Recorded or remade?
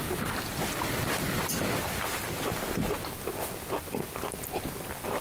recorded